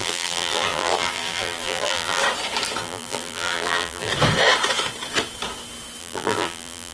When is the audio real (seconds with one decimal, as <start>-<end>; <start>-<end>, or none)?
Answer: 2.2-2.8; 4.1-6.0